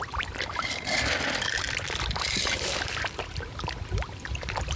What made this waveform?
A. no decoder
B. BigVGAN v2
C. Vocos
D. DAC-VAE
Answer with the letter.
B